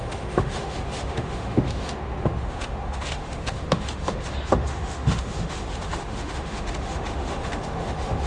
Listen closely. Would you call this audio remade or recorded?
remade